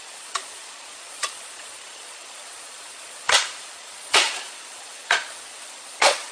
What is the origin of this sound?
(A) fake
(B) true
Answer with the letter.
A